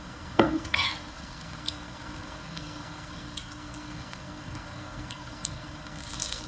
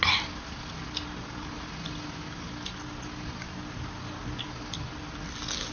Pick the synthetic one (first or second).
first